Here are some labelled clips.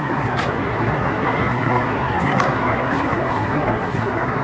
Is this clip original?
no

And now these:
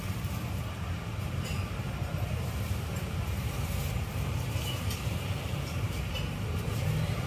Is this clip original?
no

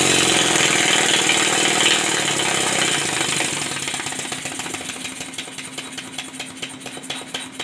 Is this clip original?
yes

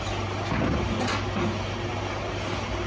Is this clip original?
yes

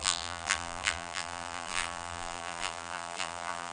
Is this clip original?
no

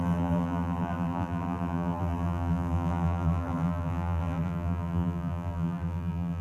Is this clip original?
no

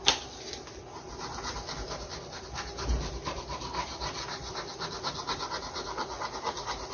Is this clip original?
yes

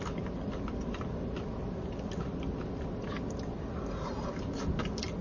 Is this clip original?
yes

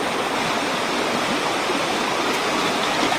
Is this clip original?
yes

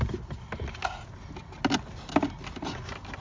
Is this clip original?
yes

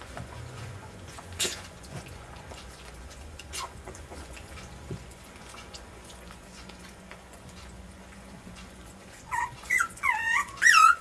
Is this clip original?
no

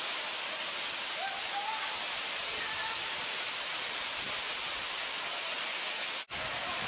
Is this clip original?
no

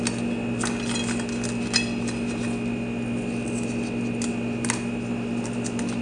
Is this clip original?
yes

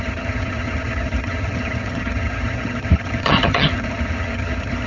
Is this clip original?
no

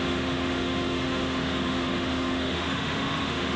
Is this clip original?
no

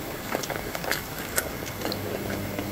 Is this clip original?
no